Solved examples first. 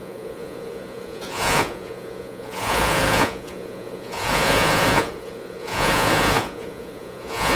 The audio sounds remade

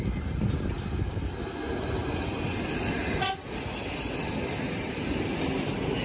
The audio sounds recorded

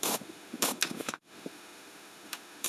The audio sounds remade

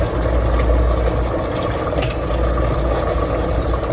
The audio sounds recorded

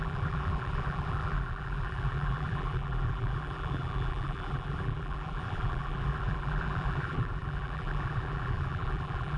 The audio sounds remade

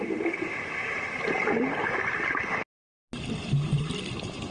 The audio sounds recorded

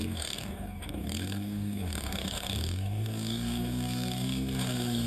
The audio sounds remade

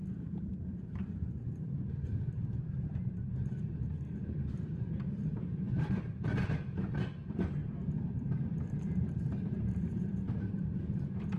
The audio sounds remade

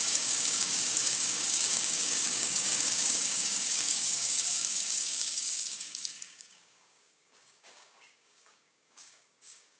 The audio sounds remade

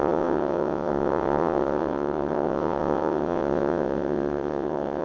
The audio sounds remade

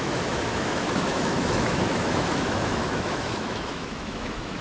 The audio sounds remade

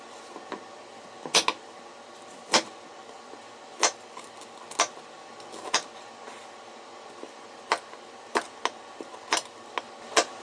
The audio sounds recorded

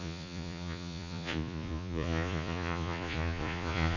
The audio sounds remade